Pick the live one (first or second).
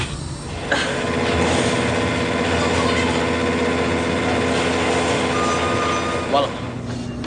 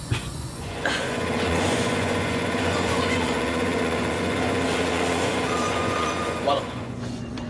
first